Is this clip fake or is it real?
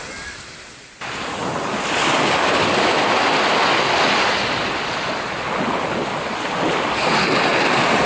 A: real